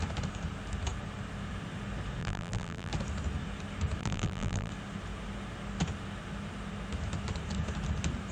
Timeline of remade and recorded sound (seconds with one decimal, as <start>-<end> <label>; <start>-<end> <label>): 0.0-2.2 recorded; 2.2-2.9 remade; 2.9-4.0 recorded; 4.0-4.7 remade; 4.7-8.3 recorded